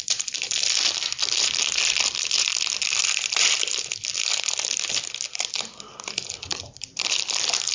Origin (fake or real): fake